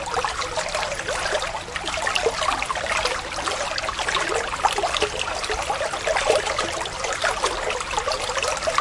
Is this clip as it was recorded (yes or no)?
yes